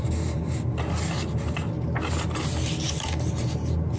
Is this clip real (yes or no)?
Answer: yes